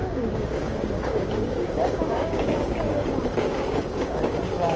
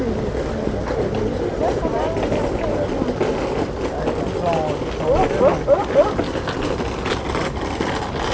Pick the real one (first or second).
second